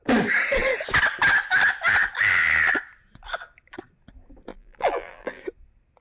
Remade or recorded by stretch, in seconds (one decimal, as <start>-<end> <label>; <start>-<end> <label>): 0.0-4.5 recorded; 4.5-5.4 remade; 5.4-6.0 recorded